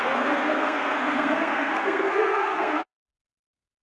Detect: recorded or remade remade